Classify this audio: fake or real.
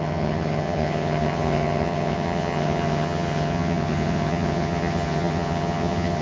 fake